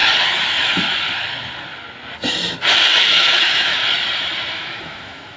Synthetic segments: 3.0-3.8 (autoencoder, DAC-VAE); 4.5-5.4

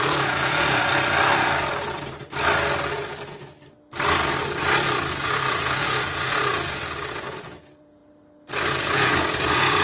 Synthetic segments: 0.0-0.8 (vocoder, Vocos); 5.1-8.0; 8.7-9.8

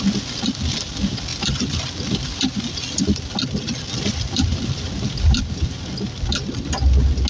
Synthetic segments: 1.3-2.4 (vocoder, BigVGAN v2)